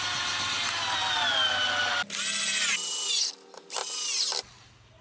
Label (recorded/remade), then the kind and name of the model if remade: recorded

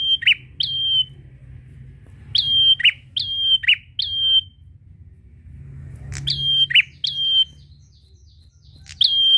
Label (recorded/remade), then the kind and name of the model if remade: recorded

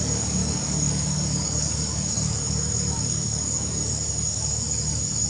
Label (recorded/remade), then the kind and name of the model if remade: remade, codec, DAC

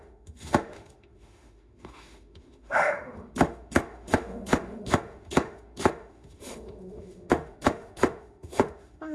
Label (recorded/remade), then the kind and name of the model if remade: remade, autoencoder, DAC-VAE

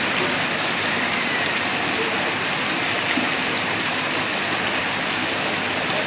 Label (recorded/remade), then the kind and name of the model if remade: remade, vocoder, BigVGAN v2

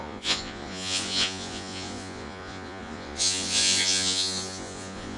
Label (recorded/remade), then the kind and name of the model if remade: remade, vocoder, Vocos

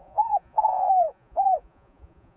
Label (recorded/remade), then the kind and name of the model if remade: remade, vocoder, Vocos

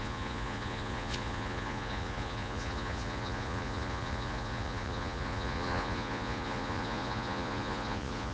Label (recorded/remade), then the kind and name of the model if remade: remade, vocoder, Vocos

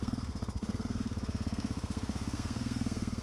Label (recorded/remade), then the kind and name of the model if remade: remade, codec, SNAC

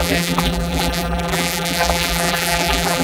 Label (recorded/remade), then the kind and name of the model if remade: remade, vocoder, BigVGAN v2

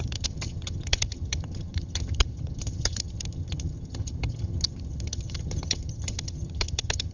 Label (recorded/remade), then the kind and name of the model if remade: remade, vocoder, HiFi-GAN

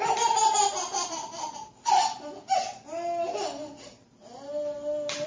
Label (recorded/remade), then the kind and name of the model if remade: recorded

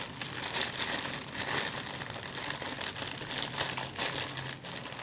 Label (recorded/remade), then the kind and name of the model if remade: recorded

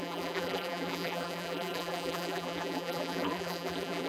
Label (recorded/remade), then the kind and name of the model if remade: remade, vocoder, BigVGAN v2